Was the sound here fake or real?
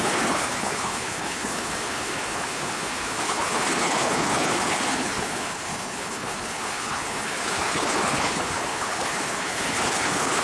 fake